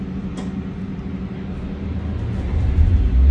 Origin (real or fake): real